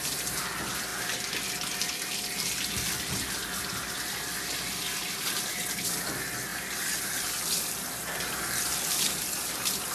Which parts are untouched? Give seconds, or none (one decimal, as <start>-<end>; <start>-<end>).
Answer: 0.0-9.9